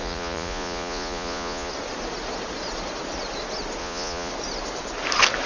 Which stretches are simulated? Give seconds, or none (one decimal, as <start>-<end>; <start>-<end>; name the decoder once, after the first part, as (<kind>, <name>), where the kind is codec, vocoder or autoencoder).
0.0-1.7 (vocoder, Vocos); 3.8-4.3